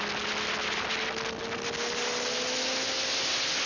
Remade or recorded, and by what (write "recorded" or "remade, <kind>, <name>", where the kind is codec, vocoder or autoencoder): recorded